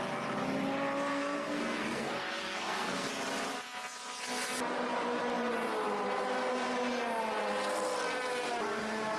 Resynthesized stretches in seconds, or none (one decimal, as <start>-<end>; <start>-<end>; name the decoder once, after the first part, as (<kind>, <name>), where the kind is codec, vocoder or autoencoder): 1.1-3.1 (codec, SNAC)